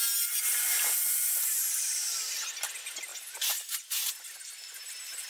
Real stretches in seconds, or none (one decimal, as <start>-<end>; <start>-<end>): 0.0-5.3